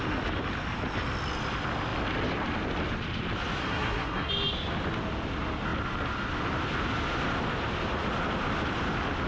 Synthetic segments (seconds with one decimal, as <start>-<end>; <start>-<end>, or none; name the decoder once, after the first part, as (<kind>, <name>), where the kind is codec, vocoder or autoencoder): 3.6-4.3 (codec, SNAC)